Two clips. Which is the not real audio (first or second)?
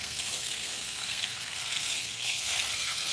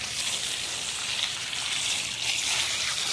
first